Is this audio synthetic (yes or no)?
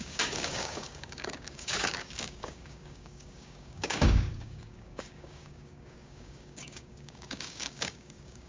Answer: yes